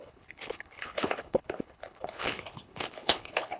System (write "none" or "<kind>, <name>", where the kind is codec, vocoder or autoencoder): codec, HILCodec